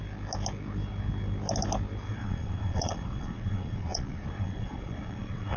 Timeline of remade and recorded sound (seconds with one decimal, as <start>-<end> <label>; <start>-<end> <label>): 0.0-2.1 recorded; 2.1-5.6 remade